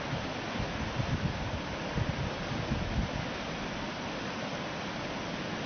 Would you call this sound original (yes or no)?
yes